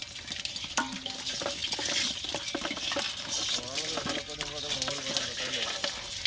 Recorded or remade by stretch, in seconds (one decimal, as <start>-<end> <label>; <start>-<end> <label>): 0.0-6.3 recorded